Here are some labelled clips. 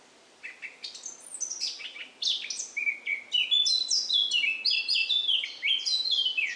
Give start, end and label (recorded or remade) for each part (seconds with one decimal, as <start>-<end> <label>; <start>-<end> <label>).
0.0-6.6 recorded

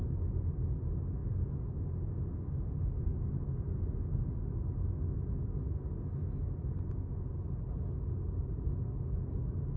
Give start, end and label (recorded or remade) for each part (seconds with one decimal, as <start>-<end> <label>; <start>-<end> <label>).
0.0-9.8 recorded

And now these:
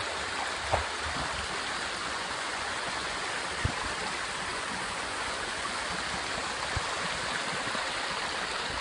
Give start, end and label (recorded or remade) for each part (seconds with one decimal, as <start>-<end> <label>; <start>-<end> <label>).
0.0-2.0 recorded; 2.0-3.3 remade; 3.3-4.5 recorded; 4.5-5.8 remade; 5.8-8.8 recorded

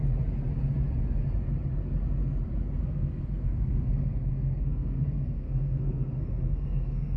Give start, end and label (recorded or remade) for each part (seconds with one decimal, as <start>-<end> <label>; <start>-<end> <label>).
0.0-2.8 recorded; 2.8-7.2 remade